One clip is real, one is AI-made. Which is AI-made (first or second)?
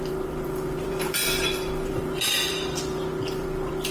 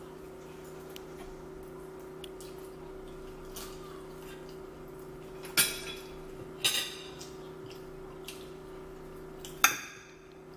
first